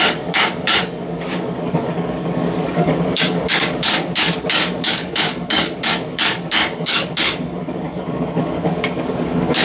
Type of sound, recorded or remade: remade